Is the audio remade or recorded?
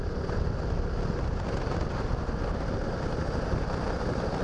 recorded